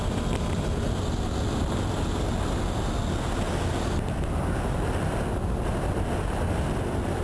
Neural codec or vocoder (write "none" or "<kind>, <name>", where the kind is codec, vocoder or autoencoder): none